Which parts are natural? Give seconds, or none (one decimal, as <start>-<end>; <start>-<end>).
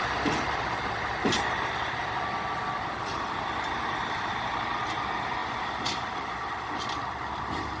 0.0-7.8